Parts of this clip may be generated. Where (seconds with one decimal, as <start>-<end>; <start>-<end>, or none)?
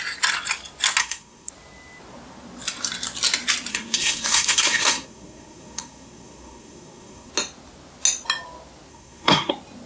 1.0-1.5; 3.7-7.3; 8.9-9.5